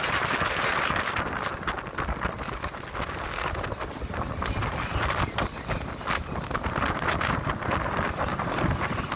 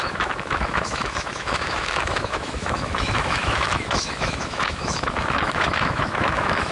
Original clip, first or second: first